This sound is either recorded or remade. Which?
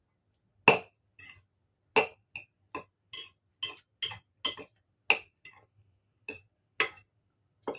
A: recorded